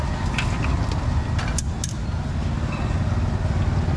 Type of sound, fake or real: real